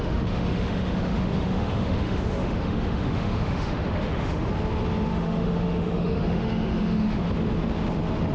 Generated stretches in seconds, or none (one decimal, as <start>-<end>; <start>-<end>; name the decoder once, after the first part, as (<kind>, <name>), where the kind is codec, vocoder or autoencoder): 0.0-4.5 (autoencoder, DAC-VAE); 5.1-7.2